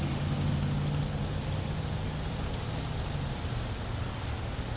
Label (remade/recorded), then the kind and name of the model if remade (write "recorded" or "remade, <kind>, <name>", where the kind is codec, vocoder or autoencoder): recorded